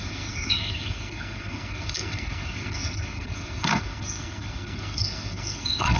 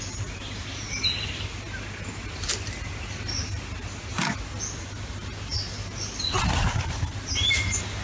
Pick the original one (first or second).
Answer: second